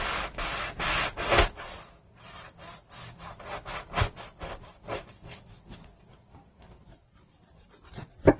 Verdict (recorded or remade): recorded